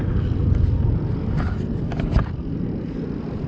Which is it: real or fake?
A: real